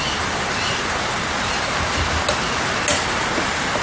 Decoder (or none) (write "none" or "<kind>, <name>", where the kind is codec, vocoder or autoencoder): none